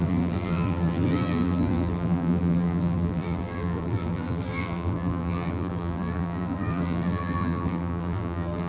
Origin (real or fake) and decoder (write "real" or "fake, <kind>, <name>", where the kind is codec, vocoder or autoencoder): fake, vocoder, BigVGAN v2